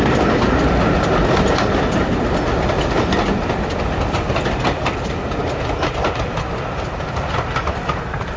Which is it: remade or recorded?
recorded